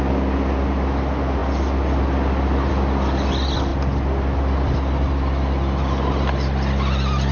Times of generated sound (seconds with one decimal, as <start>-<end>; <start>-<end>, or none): none